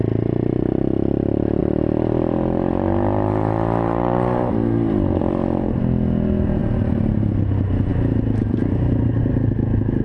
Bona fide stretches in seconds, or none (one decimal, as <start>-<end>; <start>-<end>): 0.0-1.6; 5.8-6.6; 7.4-10.0